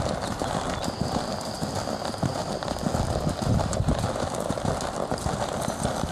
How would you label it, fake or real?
real